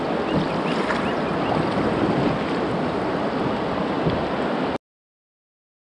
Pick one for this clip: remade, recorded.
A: recorded